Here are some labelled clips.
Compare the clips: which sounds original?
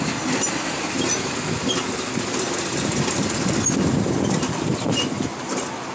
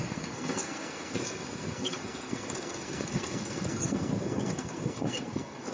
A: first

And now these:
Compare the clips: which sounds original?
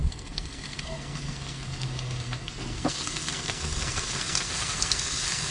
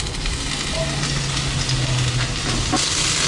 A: second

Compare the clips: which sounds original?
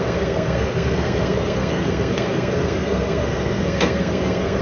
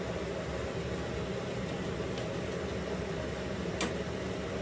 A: second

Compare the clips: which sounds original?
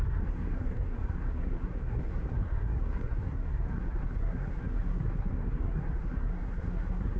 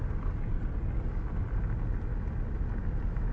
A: second